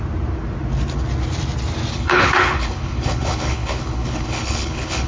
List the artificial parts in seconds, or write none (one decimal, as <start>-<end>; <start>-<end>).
1.9-5.1